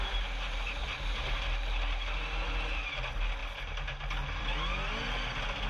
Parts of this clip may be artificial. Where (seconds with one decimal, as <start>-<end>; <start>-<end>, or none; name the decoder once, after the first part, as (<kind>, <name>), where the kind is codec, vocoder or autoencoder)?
none